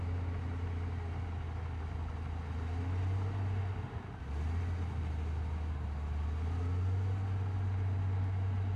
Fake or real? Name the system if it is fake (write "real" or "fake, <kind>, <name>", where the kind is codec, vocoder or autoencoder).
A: real